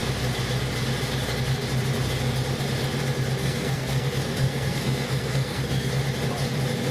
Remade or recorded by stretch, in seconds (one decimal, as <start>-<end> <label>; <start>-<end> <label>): 0.0-3.4 recorded; 3.4-6.0 remade; 6.0-6.9 recorded